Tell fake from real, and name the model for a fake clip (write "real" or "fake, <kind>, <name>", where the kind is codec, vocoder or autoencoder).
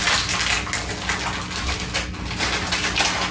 real